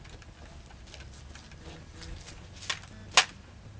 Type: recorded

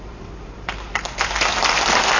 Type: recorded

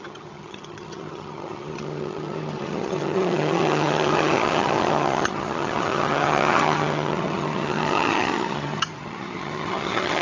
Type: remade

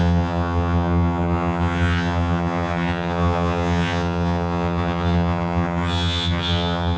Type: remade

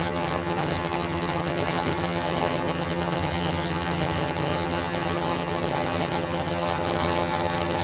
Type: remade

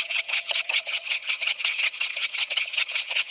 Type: remade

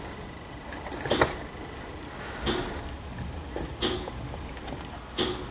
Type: recorded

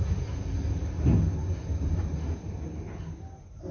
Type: recorded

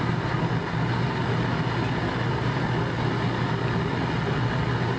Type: recorded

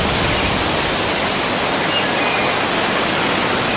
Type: recorded